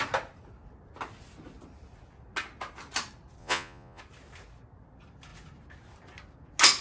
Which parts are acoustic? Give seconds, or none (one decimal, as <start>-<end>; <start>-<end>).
0.0-3.4; 4.0-6.8